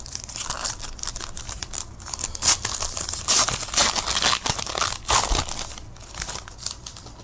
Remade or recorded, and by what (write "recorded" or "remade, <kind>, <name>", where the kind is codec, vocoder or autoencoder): recorded